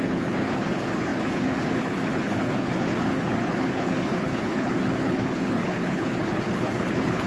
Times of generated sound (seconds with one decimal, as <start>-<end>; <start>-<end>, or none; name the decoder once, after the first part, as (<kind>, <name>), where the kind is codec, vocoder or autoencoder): 0.0-7.3 (codec, HILCodec)